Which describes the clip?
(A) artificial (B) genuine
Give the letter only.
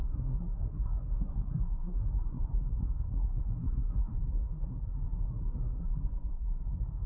A